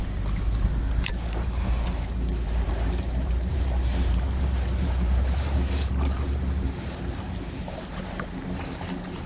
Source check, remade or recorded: remade